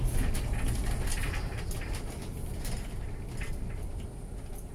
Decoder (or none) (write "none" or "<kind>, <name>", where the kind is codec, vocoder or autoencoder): none